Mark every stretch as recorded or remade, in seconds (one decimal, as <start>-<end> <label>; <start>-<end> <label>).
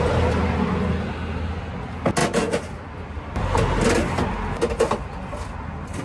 0.0-6.0 recorded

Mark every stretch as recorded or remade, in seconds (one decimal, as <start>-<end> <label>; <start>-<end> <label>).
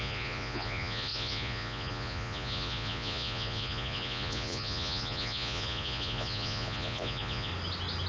0.0-7.5 remade; 7.5-8.1 recorded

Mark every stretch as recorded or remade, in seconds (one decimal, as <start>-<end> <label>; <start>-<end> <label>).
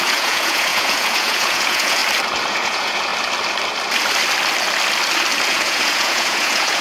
0.0-2.0 remade; 2.0-2.5 recorded; 2.5-3.1 remade; 3.1-5.5 recorded; 5.5-6.8 remade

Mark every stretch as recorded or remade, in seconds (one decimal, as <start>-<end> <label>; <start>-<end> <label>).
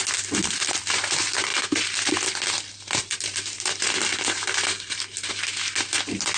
0.0-6.4 recorded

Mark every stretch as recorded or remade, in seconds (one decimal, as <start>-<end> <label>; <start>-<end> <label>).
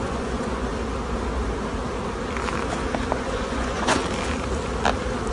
0.0-0.7 remade; 0.7-3.1 recorded; 3.1-4.0 remade; 4.0-5.3 recorded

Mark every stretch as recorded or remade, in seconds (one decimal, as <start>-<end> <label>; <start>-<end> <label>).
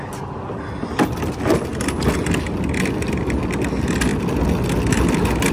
0.0-5.5 recorded